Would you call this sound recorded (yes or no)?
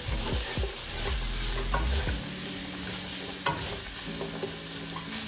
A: yes